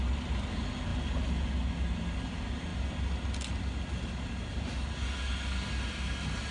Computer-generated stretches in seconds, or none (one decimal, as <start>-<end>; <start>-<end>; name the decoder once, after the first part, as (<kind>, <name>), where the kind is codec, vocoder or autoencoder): none